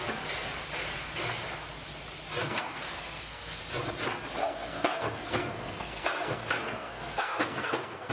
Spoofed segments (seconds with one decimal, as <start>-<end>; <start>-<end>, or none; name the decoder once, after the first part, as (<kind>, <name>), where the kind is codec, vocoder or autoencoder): 2.4-3.6 (codec, SNAC); 4.4-8.1